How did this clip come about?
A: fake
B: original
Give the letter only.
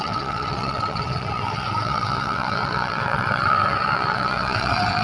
A